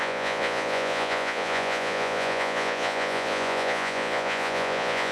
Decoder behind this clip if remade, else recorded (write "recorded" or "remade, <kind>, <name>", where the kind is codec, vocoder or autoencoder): remade, vocoder, Vocos